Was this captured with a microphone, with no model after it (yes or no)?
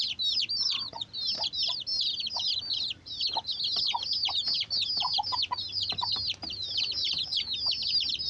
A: yes